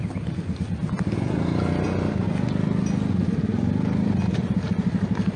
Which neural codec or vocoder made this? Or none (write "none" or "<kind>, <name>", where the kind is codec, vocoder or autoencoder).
none